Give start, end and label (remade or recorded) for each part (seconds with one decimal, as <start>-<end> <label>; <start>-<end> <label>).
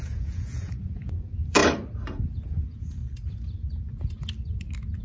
0.0-1.6 remade; 1.6-2.1 recorded; 2.1-3.0 remade; 3.0-5.0 recorded